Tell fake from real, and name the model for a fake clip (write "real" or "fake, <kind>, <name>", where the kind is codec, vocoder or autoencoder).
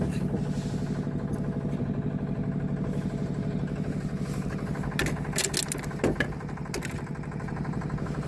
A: real